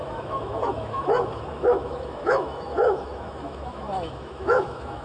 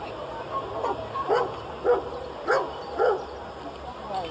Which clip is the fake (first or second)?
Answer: first